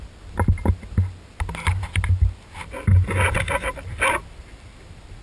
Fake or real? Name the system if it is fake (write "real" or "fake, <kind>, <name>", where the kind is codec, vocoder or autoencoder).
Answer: real